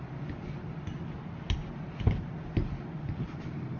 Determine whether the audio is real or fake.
real